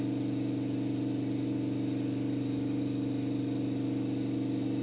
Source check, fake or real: real